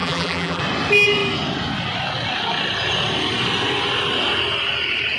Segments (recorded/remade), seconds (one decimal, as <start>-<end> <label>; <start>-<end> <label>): 0.0-0.6 remade; 0.6-5.2 recorded